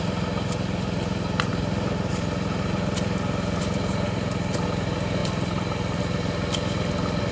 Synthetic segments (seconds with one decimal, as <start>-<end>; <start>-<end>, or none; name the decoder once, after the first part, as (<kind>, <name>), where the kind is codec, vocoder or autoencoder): 1.5-2.1 (vocoder, BigVGAN v2); 5.2-6.0